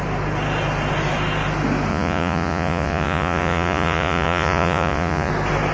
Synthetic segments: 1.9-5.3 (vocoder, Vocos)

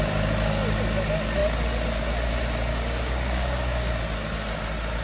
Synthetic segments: 2.7-3.9 (codec, DAC)

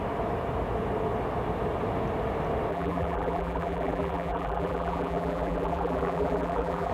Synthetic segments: 2.7-6.9 (vocoder, BigVGAN v2)

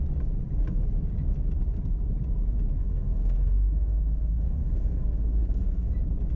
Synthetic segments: 2.8-5.9 (codec, SNAC)

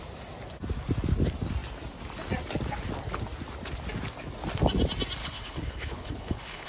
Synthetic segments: 5.2-6.7 (codec, HILCodec)